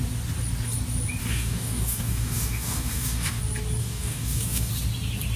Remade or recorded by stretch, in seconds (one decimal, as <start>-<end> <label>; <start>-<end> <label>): 0.0-1.2 recorded; 1.2-3.4 remade; 3.4-3.8 recorded; 3.8-4.7 remade; 4.7-5.4 recorded

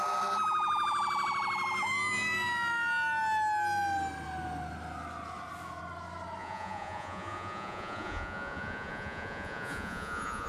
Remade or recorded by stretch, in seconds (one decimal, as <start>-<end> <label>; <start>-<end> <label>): 0.0-6.4 recorded; 6.4-10.5 remade